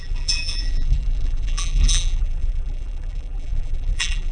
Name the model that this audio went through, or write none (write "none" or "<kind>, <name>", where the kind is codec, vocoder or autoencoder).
vocoder, BigVGAN v2